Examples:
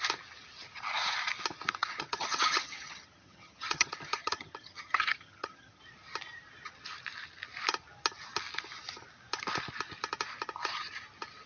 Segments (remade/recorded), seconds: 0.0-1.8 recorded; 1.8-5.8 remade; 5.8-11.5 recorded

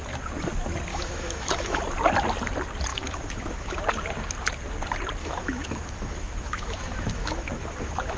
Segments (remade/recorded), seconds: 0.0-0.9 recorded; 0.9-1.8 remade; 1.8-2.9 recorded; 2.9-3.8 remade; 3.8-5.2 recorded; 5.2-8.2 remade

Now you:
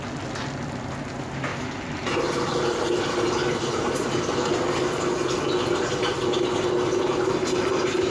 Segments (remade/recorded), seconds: 0.0-8.1 recorded